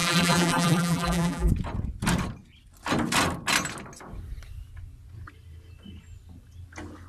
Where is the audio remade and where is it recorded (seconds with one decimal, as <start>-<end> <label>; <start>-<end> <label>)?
0.0-1.5 remade; 1.5-7.1 recorded